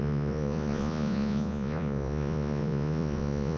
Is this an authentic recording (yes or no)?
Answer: no